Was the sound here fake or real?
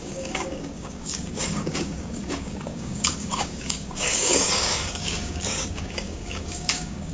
fake